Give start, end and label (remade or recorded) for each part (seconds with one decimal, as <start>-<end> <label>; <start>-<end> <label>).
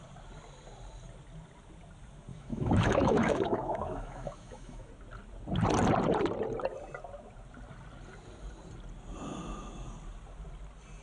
0.0-2.3 recorded; 2.3-4.9 remade; 4.9-11.0 recorded